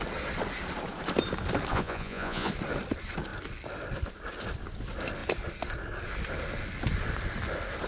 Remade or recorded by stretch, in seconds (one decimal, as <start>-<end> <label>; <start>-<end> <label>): 0.0-1.7 recorded; 1.7-2.5 remade; 2.5-7.9 recorded